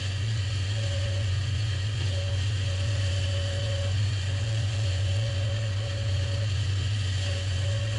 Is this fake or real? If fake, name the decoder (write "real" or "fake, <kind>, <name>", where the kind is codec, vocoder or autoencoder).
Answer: fake, vocoder, Vocos